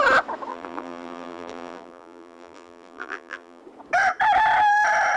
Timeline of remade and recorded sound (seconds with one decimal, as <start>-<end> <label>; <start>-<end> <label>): 0.0-0.5 recorded; 0.5-3.6 remade; 3.6-5.2 recorded